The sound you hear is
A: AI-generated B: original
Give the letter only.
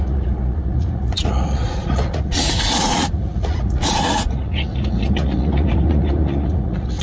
A